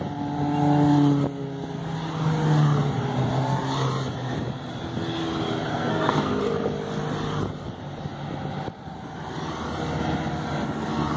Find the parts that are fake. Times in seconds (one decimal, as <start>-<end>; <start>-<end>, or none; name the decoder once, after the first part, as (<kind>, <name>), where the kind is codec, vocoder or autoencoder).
5.7-6.4 (codec, SNAC)